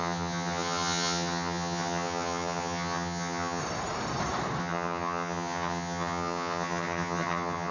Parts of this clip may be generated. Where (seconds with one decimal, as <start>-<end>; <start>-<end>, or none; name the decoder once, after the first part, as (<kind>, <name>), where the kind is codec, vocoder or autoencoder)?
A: 0.0-3.6 (vocoder, HiFi-GAN); 4.6-7.7